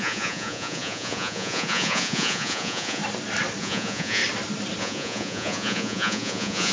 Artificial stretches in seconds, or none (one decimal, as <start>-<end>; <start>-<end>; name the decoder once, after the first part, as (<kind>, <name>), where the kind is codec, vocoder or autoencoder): 0.0-3.0 (vocoder, Vocos); 3.6-4.2; 4.8-6.7

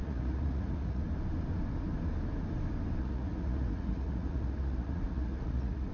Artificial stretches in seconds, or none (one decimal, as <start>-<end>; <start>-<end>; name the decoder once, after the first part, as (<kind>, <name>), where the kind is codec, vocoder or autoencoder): 0.0-1.0 (vocoder, Vocos); 3.0-5.9

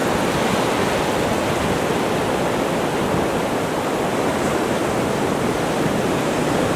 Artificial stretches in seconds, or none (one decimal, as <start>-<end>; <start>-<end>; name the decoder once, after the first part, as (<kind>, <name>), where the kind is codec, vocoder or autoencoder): none